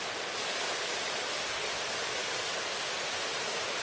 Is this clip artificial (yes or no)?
no